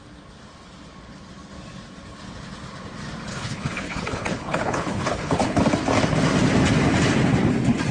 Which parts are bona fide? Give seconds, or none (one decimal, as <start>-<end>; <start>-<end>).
0.0-3.3; 5.6-7.9